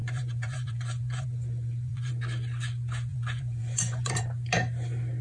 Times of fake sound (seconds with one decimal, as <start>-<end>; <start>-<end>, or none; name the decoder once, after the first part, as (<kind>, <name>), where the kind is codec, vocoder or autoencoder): 0.0-2.1 (vocoder, Vocos); 3.1-4.2